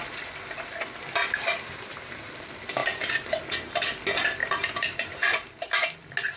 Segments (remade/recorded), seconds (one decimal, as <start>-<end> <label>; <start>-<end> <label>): 0.0-1.2 recorded; 1.2-2.1 remade; 2.1-4.4 recorded; 4.4-5.5 remade; 5.5-6.4 recorded